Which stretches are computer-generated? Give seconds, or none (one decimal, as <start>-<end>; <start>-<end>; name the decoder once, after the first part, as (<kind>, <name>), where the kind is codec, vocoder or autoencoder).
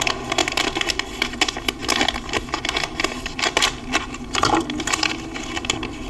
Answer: none